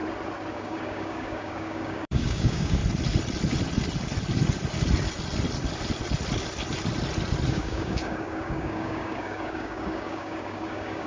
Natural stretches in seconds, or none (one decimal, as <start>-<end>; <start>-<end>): 0.0-0.5; 2.8-7.5